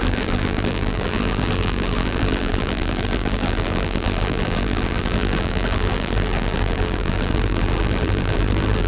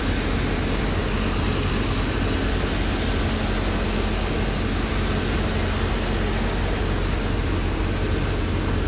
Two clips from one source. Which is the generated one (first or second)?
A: first